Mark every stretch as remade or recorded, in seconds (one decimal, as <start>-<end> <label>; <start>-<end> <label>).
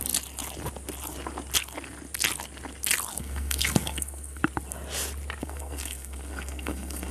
0.0-3.1 recorded; 3.1-4.4 remade; 4.4-5.4 recorded; 5.4-7.1 remade